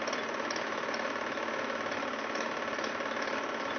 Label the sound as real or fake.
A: real